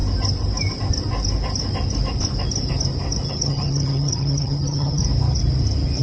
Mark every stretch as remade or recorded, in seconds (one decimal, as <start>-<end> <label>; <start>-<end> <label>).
0.0-3.3 recorded; 3.3-5.0 remade; 5.0-6.0 recorded